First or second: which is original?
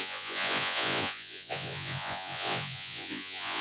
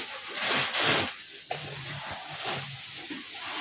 second